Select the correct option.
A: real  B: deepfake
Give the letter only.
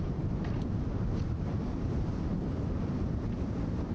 B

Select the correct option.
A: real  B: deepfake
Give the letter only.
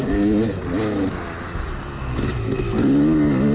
A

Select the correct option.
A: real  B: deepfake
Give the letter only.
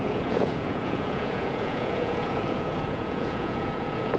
B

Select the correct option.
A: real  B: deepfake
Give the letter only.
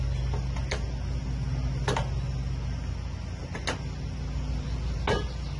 A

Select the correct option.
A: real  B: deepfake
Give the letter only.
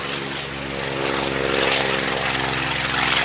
A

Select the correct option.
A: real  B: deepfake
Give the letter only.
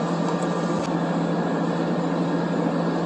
A